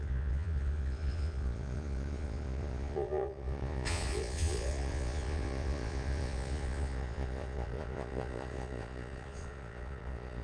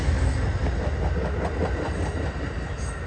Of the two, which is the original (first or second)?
second